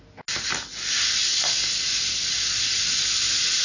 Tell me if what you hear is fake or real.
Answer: real